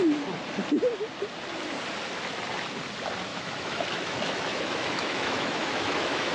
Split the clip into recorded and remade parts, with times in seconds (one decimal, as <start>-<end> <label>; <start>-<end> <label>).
0.0-3.3 recorded; 3.3-6.3 remade